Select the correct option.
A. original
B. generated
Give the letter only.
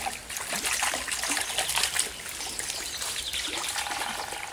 A